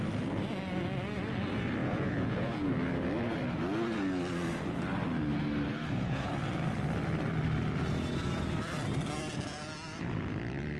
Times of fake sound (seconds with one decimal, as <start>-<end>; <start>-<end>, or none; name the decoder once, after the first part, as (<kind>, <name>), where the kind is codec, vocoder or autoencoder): 1.8-2.7 (vocoder, Vocos); 5.7-6.3